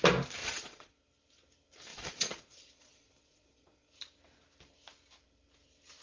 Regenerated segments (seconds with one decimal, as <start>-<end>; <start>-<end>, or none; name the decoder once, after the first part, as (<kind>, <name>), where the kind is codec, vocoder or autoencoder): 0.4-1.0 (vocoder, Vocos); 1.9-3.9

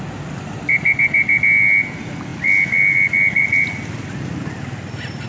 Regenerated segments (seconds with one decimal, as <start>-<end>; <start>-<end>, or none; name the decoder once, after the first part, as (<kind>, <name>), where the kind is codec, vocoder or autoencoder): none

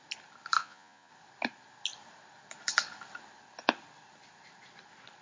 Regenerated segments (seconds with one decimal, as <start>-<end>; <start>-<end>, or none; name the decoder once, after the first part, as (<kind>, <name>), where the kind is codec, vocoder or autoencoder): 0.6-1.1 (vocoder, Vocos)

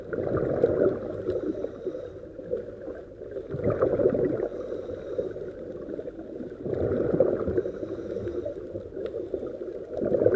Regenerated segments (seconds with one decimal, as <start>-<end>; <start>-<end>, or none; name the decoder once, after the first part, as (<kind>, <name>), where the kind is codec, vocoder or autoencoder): none

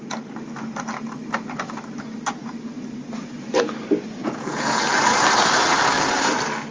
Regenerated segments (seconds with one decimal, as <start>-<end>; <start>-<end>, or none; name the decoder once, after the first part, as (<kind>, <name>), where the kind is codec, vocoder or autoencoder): 4.2-4.8 (vocoder, Vocos)

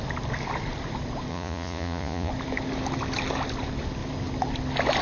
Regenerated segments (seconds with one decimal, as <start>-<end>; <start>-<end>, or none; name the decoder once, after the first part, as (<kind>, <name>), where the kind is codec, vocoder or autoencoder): 1.3-2.3 (vocoder, Vocos)

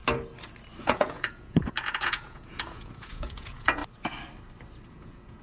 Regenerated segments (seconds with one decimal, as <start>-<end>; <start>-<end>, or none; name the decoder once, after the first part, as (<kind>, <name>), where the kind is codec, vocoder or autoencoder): 0.8-3.8 (vocoder, Vocos); 4.9-5.4

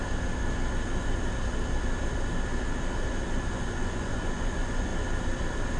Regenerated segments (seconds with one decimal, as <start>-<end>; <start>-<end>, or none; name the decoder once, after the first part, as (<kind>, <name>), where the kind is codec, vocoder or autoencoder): 3.5-4.9 (vocoder, Vocos)